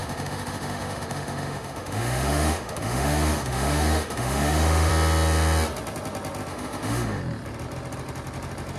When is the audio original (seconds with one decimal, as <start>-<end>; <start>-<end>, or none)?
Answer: 4.9-6.5; 7.2-8.8